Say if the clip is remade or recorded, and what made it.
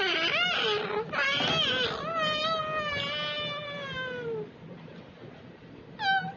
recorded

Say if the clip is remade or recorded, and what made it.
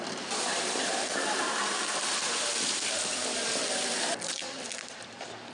remade, vocoder, BigVGAN v2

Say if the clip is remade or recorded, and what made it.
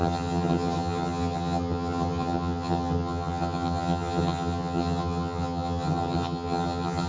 remade, vocoder, HiFi-GAN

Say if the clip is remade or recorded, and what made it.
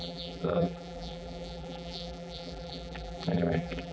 remade, vocoder, BigVGAN v2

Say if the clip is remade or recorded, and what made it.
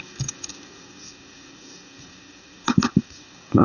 remade, codec, DAC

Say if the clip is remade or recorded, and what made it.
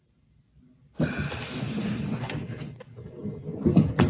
recorded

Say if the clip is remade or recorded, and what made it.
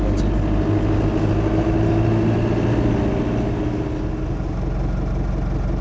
recorded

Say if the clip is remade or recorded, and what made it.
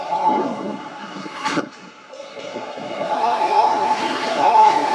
remade, codec, SNAC